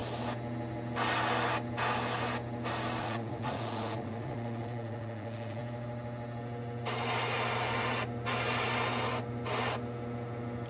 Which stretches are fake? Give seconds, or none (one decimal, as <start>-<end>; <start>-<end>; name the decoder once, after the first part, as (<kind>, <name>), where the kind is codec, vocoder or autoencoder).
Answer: 3.0-5.6 (vocoder, Vocos)